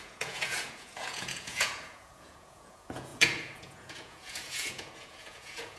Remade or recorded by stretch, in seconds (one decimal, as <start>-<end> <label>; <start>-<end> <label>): 0.0-5.8 remade